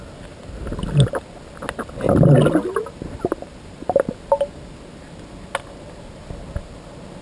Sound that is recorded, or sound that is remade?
recorded